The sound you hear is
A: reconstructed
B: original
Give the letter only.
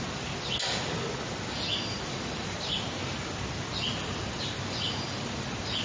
B